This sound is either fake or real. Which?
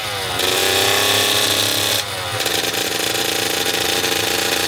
real